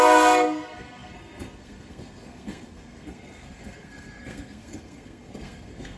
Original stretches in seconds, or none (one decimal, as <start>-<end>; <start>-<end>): none